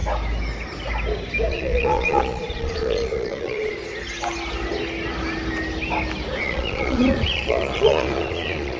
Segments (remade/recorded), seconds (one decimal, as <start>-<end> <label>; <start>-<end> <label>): 0.0-1.5 recorded; 1.5-3.8 remade; 3.8-6.4 recorded; 6.4-8.8 remade